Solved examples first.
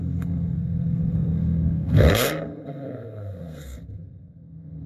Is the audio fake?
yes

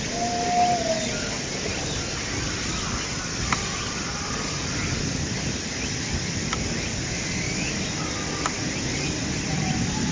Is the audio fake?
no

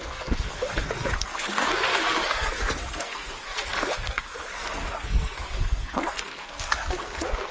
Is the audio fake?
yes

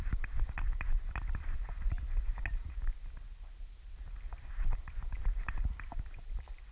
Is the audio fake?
no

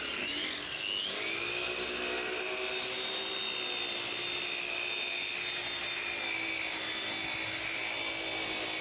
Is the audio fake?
no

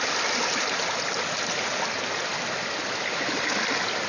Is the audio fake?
no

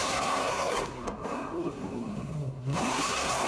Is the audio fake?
yes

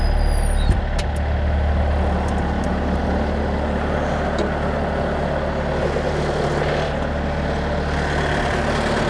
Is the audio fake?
no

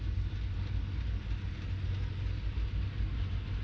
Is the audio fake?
no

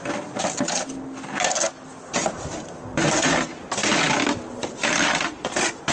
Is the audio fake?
no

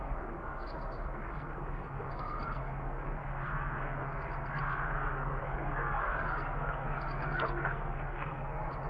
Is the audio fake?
yes